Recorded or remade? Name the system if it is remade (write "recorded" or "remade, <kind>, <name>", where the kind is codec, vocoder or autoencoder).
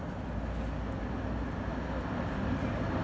recorded